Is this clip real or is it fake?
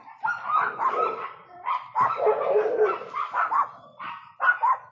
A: real